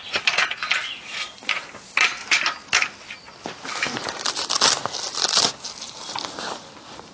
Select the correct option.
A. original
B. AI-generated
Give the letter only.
A